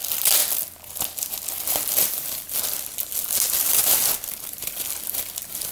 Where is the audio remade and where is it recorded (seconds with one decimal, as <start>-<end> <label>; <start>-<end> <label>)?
0.0-5.7 recorded